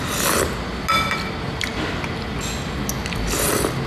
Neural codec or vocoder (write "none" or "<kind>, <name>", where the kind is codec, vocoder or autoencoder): none